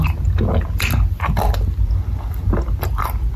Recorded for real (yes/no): yes